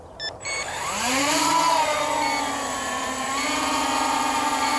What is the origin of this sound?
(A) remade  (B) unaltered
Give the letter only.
A